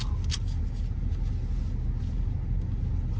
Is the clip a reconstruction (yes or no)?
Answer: no